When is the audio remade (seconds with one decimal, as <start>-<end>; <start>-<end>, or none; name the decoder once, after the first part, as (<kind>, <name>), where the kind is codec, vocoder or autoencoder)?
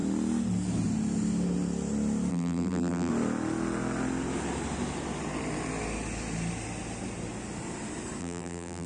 2.3-3.1 (vocoder, BigVGAN v2); 8.2-8.9